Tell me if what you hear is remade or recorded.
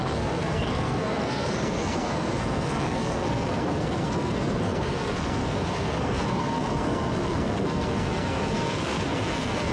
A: remade